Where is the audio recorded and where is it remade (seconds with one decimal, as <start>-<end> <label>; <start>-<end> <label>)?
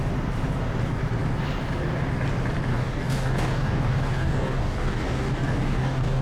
0.0-2.7 recorded; 2.7-6.2 remade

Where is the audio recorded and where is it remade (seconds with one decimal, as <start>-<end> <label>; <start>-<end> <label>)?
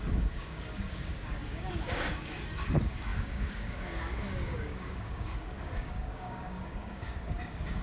0.0-7.8 remade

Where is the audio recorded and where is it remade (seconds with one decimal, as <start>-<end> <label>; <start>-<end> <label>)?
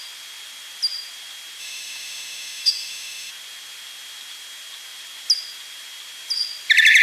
0.0-1.6 recorded; 1.6-3.3 remade; 3.3-7.0 recorded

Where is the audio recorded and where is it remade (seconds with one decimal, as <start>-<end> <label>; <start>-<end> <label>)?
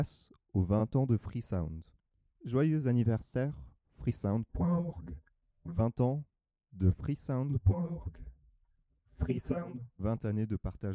0.0-4.5 recorded; 4.5-5.8 remade; 5.8-7.5 recorded; 7.5-10.0 remade; 10.0-10.9 recorded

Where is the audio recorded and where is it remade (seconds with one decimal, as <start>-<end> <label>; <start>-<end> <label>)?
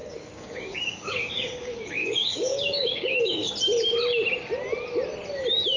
0.0-3.5 remade; 3.5-5.8 recorded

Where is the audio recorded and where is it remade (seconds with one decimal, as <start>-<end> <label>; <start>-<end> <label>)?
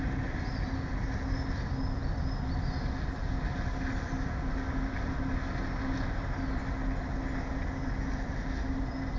0.0-9.2 recorded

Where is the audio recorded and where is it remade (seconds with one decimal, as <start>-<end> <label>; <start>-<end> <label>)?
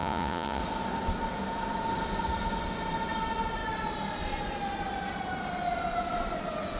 0.0-0.6 remade; 0.6-6.8 recorded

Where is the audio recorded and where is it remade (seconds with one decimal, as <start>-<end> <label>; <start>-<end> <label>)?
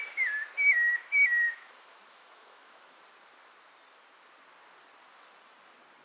0.0-0.7 recorded; 0.7-3.0 remade; 3.0-6.0 recorded